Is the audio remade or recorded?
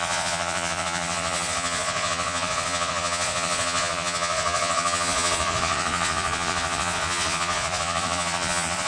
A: remade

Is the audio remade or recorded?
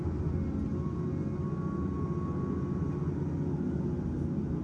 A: recorded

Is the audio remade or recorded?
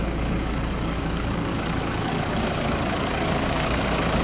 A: remade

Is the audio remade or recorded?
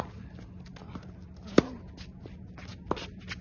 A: recorded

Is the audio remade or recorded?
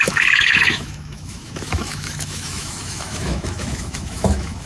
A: remade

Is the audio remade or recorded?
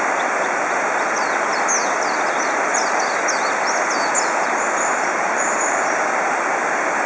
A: recorded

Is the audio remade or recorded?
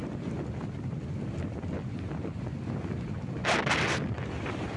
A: recorded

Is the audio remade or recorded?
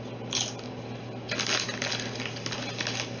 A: recorded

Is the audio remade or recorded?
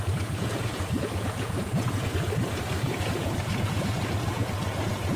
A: remade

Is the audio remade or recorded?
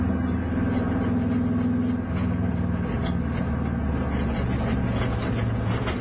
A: recorded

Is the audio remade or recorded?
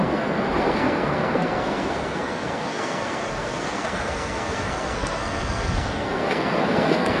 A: remade